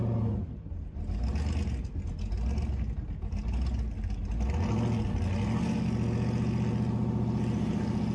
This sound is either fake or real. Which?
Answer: real